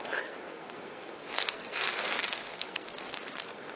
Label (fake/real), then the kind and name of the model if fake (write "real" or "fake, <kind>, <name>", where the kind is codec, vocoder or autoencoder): fake, codec, SNAC